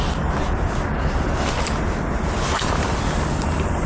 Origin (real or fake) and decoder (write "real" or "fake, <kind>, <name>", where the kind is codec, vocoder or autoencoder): real